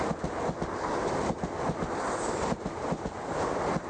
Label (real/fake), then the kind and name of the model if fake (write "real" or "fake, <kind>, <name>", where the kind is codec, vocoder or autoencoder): real